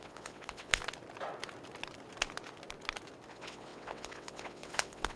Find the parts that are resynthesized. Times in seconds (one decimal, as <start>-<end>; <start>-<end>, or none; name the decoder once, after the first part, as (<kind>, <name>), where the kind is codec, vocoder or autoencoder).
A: 0.0-0.8 (vocoder, WaveNeXt); 3.3-5.2